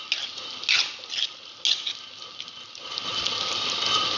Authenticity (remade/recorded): recorded